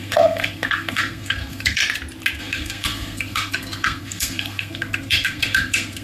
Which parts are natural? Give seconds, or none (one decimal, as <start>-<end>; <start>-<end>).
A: 1.8-2.4